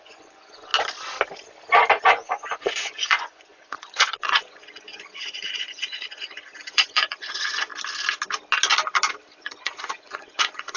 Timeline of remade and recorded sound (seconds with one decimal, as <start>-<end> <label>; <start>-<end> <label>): 0.0-0.7 remade; 0.7-2.1 recorded; 2.1-7.7 remade; 7.7-9.4 recorded; 9.4-10.8 remade